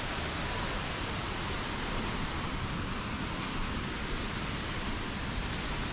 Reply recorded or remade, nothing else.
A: recorded